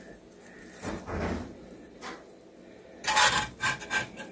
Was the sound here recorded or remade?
recorded